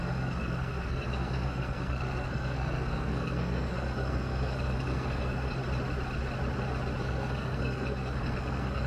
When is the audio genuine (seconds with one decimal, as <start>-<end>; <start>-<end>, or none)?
5.6-7.0